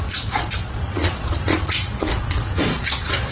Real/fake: fake